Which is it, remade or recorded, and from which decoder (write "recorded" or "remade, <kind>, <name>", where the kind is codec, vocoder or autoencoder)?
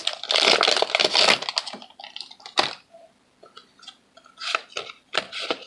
recorded